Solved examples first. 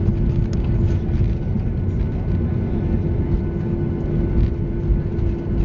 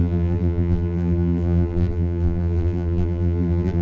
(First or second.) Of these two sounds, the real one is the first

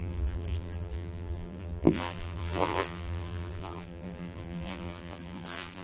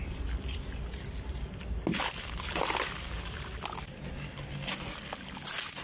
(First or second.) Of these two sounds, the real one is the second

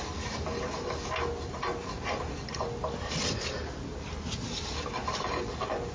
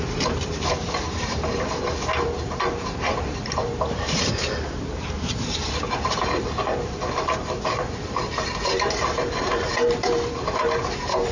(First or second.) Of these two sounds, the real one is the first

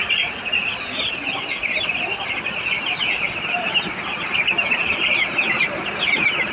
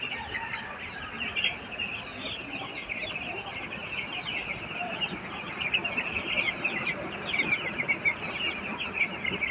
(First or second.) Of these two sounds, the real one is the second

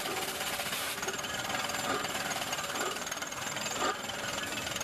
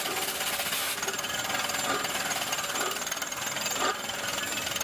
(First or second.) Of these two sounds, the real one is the second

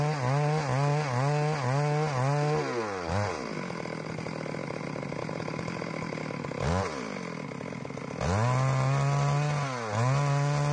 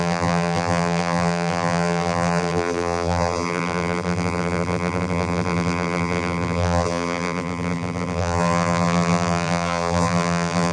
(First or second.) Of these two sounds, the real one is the first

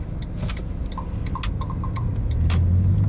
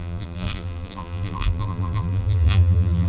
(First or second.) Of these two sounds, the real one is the first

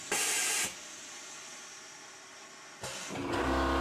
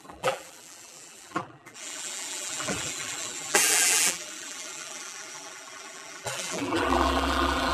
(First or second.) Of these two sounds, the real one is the first